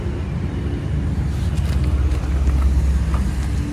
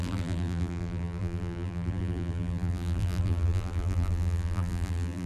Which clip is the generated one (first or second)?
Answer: second